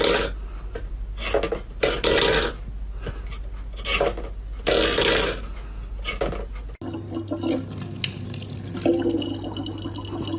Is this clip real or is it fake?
real